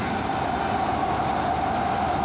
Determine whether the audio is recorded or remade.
recorded